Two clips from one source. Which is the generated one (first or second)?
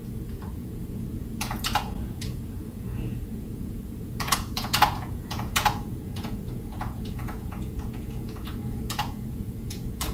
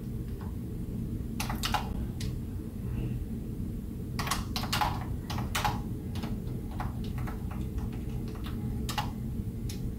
first